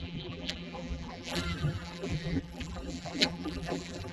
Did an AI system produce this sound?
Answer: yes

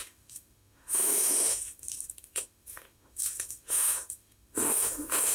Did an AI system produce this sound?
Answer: yes